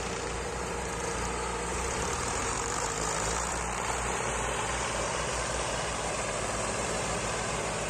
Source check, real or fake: fake